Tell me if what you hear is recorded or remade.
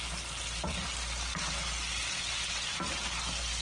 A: recorded